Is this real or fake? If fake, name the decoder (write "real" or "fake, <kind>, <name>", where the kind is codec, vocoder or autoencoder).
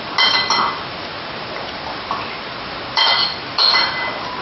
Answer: real